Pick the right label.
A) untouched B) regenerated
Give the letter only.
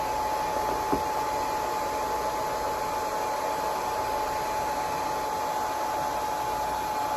A